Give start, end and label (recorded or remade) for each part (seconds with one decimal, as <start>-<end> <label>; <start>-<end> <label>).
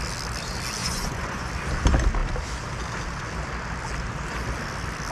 0.0-0.8 recorded; 0.8-1.5 remade; 1.5-5.1 recorded